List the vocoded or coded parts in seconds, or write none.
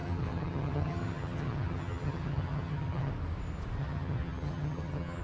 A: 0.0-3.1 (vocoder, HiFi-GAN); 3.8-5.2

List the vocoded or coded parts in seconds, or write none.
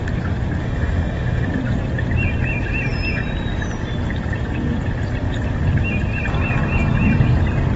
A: 0.6-1.5 (autoencoder, DAC-VAE)